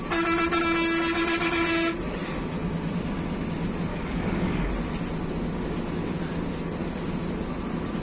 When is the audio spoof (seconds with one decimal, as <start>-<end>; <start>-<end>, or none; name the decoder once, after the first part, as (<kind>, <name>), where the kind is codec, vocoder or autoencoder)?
3.9-4.7 (codec, DAC)